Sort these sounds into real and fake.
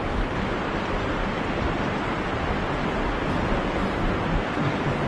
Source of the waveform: real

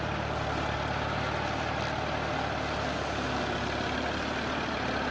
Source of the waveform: real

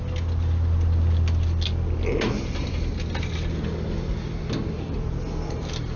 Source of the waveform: real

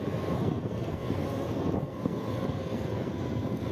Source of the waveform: fake